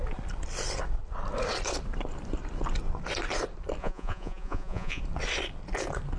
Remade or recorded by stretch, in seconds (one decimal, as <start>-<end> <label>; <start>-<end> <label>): 0.0-3.8 recorded; 3.8-5.0 remade; 5.0-6.2 recorded